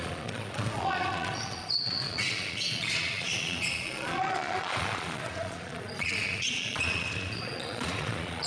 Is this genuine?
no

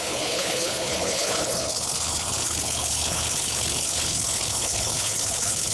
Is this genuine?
no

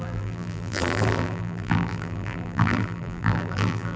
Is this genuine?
no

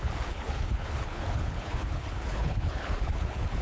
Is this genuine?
no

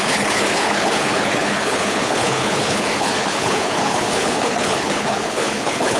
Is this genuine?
no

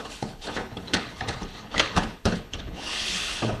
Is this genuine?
no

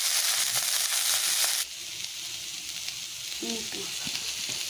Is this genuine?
yes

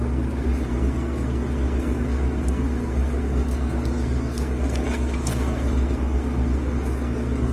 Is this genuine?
no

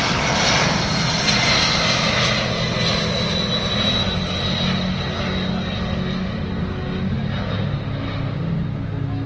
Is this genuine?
yes